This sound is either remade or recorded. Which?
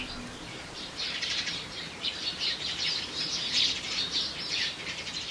remade